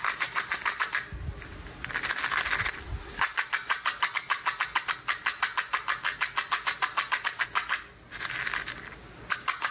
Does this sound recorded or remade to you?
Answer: recorded